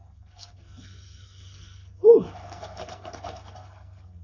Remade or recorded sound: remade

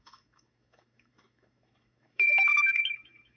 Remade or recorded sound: remade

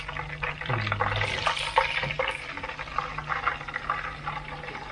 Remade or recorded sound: recorded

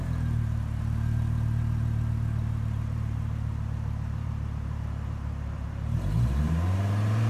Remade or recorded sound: remade